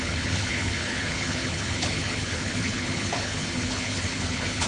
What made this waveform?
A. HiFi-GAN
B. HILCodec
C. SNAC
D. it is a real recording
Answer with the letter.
B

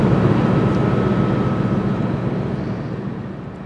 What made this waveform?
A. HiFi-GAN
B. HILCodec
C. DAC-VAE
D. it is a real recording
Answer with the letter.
D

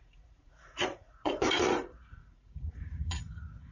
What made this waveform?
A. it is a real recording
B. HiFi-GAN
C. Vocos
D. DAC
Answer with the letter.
C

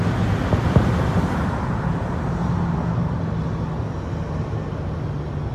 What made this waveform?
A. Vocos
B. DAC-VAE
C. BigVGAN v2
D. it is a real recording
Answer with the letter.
D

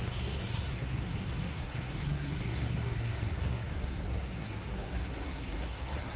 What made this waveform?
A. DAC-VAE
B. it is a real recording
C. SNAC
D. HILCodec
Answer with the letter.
C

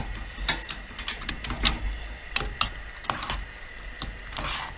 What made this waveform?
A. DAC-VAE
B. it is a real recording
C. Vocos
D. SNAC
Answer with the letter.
B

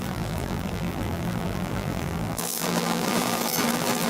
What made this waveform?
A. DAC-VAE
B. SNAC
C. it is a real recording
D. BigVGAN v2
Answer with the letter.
D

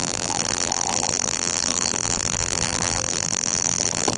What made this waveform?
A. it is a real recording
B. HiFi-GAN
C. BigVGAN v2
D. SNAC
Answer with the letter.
C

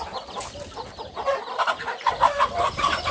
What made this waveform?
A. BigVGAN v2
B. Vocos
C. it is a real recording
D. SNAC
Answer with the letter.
C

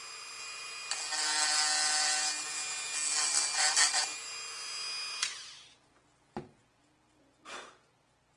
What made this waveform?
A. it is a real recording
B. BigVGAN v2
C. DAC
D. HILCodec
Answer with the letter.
A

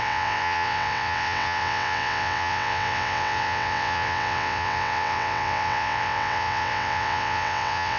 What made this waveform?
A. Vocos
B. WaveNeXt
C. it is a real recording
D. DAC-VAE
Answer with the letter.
B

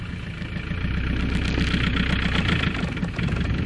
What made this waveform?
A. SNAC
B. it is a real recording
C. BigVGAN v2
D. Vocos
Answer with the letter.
B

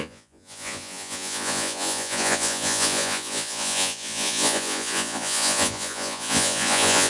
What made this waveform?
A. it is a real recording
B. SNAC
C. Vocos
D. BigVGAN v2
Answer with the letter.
C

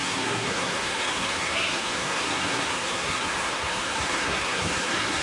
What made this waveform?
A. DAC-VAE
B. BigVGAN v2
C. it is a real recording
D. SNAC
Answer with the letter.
D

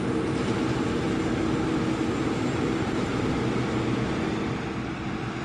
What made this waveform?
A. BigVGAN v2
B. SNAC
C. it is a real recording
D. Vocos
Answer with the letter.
C